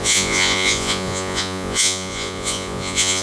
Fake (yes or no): yes